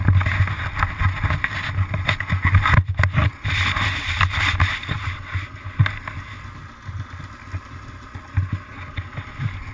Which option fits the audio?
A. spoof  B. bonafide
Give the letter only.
B